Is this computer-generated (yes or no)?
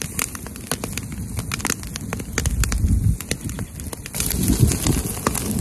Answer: no